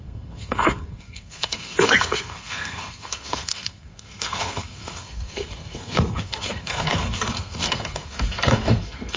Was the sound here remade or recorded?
remade